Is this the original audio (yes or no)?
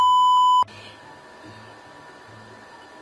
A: yes